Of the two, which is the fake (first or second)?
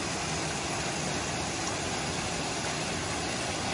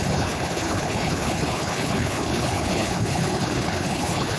second